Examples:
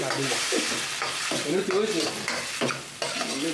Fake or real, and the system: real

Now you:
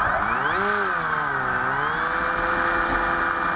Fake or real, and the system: real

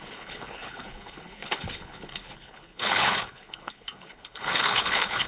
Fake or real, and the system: fake, codec, HILCodec